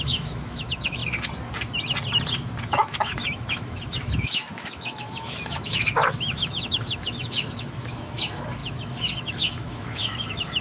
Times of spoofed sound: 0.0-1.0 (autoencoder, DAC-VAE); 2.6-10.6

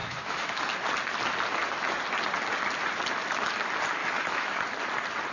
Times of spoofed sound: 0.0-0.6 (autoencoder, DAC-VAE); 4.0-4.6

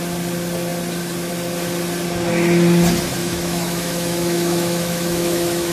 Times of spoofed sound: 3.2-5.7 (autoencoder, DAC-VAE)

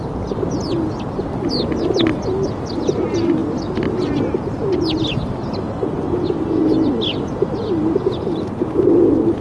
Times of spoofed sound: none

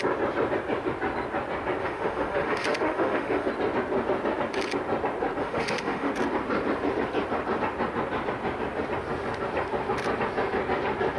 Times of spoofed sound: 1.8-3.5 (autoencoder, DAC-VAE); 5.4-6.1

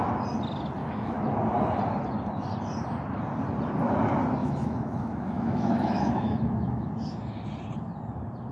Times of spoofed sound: 0.8-1.3 (autoencoder, DAC-VAE); 4.4-6.9